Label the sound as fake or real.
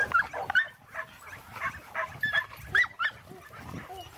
real